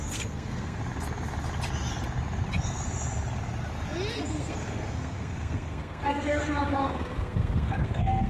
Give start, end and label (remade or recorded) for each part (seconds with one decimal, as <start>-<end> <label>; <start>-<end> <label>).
0.0-0.8 remade; 0.8-4.1 recorded; 4.1-8.3 remade